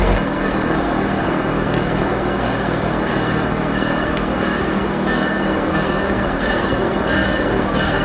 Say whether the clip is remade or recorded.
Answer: remade